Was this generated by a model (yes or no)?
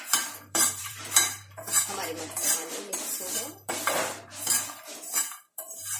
yes